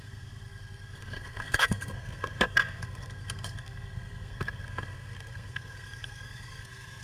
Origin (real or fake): fake